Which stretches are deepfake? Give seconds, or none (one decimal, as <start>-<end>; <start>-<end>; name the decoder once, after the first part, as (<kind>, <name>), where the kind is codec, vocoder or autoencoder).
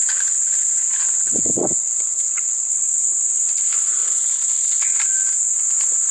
0.6-2.7 (vocoder, WaveNeXt); 4.0-5.0